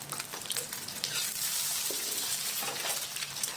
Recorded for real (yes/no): no